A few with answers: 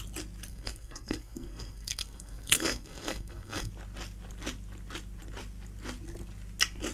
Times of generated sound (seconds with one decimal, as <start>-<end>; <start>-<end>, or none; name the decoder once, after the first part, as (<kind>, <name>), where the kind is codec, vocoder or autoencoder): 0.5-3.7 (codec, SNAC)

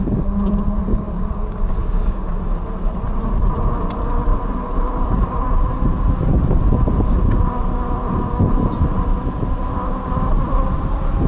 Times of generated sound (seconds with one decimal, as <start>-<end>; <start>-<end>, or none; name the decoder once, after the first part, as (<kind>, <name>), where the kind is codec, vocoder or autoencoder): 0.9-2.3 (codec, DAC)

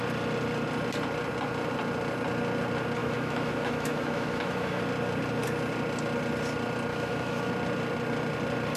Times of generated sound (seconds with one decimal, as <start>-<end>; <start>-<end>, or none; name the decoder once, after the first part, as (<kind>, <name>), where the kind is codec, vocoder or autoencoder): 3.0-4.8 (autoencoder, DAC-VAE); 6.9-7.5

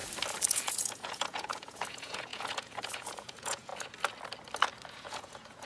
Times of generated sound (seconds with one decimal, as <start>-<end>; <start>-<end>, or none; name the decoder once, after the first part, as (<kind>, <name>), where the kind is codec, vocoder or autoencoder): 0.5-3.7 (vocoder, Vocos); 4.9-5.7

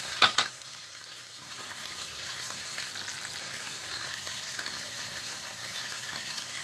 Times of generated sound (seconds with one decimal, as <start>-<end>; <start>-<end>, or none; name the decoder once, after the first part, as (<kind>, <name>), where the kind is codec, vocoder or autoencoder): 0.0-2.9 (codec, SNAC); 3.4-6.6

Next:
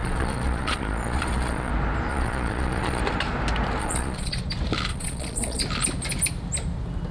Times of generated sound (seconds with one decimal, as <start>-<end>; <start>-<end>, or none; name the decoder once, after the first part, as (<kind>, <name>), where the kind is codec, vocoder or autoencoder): 0.0-1.7 (vocoder, Vocos); 2.1-3.0; 3.8-4.4; 4.9-5.6